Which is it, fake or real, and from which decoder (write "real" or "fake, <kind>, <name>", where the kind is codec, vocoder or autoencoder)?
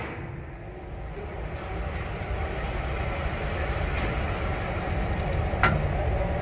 real